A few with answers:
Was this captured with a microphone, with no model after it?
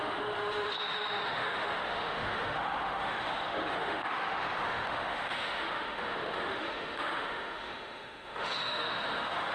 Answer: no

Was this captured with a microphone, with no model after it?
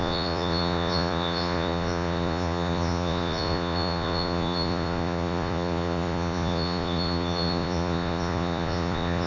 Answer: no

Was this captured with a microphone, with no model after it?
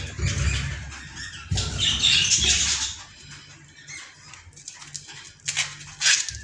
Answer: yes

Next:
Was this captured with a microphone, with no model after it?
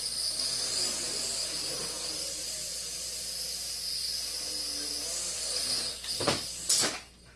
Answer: yes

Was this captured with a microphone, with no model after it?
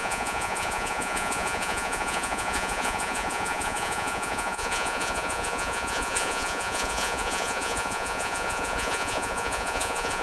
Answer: no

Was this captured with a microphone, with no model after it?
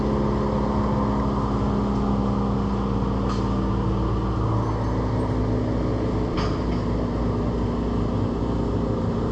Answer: yes